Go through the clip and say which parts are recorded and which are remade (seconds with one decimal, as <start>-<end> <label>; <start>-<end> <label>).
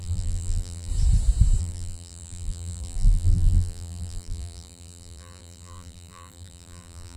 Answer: 0.0-0.9 remade; 0.9-1.6 recorded; 1.6-7.2 remade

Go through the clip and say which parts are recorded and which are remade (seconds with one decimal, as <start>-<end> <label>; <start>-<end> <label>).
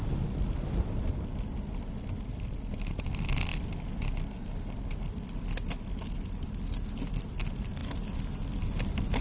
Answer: 0.0-9.2 recorded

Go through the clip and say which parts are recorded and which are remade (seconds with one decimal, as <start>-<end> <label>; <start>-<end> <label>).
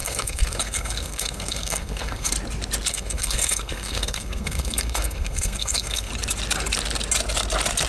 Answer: 0.0-2.3 remade; 2.3-2.9 recorded; 2.9-6.1 remade; 6.1-7.9 recorded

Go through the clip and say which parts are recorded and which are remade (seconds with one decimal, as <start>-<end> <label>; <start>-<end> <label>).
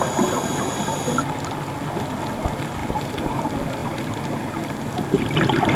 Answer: 0.0-2.8 recorded; 2.8-3.4 remade; 3.4-5.7 recorded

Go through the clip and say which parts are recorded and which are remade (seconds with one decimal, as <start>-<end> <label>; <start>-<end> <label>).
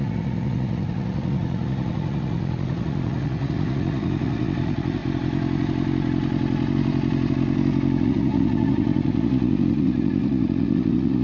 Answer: 0.0-5.0 remade; 5.0-8.0 recorded; 8.0-11.2 remade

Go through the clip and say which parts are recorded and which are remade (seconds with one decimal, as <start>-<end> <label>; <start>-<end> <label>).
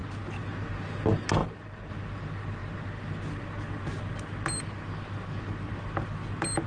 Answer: 0.0-1.4 recorded; 1.4-1.9 remade; 1.9-6.7 recorded